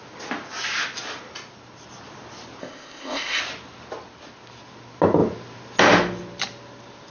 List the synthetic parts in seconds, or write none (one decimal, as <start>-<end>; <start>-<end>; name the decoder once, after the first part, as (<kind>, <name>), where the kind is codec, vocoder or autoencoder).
2.6-3.4 (codec, ZipCodec)